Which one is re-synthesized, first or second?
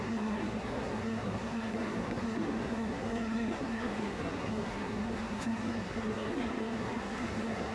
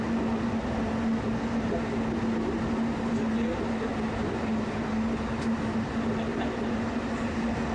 first